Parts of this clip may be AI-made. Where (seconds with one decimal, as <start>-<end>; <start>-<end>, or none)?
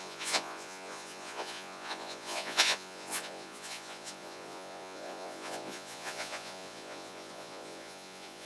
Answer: 0.0-8.5